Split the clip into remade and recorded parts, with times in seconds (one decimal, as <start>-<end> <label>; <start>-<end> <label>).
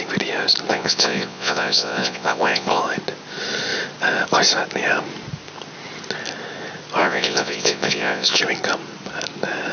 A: 0.0-0.7 recorded; 0.7-2.8 remade; 2.8-7.0 recorded; 7.0-8.4 remade; 8.4-9.7 recorded